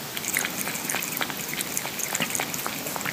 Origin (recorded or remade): recorded